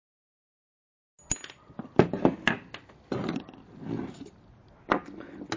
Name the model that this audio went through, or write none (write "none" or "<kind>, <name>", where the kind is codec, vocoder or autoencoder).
none